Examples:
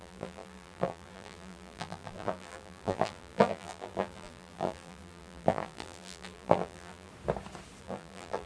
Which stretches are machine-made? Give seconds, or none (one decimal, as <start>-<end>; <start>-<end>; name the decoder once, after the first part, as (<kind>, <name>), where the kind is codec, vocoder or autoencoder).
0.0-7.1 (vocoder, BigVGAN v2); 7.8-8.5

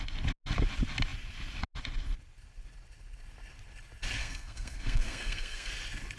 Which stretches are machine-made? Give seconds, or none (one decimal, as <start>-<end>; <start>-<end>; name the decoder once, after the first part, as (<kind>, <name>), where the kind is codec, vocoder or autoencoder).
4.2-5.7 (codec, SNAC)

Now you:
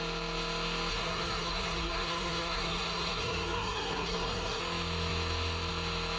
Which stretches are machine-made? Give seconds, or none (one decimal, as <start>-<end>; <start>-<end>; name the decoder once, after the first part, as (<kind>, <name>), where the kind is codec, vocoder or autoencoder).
0.9-4.6 (codec, SNAC)

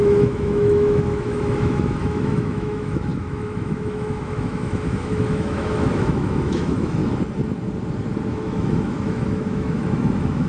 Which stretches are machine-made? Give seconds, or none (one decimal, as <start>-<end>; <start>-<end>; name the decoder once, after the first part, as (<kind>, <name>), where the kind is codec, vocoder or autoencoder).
0.0-7.0 (autoencoder, DAC-VAE); 8.3-10.5

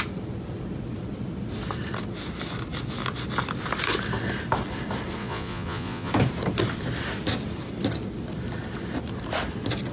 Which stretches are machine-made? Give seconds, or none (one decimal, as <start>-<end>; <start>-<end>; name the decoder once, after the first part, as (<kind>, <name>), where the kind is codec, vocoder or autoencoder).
5.2-6.1 (vocoder, Vocos)